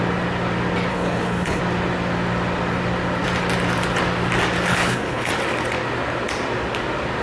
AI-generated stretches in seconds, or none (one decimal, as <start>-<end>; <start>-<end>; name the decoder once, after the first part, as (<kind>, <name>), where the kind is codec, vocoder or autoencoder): 0.9-1.6 (codec, HILCodec); 4.7-5.3